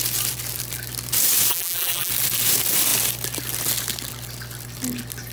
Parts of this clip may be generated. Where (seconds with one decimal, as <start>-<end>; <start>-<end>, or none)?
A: 1.5-2.1